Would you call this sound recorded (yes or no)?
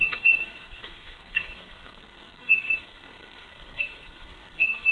no